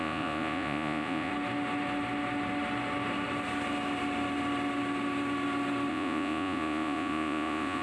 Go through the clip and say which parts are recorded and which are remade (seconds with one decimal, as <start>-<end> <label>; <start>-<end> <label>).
0.0-1.3 remade; 1.3-5.9 recorded; 5.9-7.8 remade